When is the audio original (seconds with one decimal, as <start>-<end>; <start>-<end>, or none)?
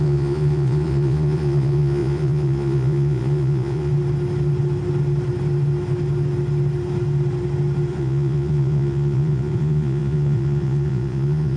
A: 3.9-7.9